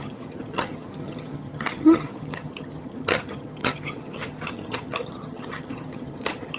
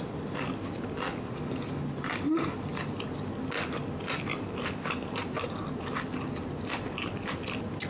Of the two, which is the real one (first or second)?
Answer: second